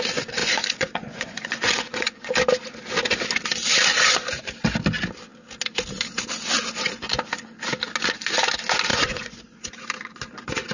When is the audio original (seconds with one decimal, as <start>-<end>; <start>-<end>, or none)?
0.0-0.4; 2.3-8.9; 9.7-10.7